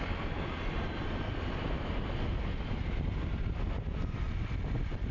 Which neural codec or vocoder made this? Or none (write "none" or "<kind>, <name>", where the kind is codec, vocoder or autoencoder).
none